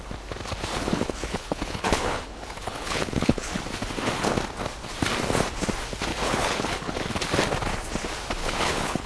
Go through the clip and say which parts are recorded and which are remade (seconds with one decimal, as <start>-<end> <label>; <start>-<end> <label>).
0.0-0.7 recorded; 0.7-3.6 remade; 3.6-6.1 recorded; 6.1-6.9 remade; 6.9-8.4 recorded; 8.4-9.1 remade